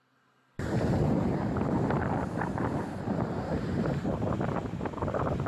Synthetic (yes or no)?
no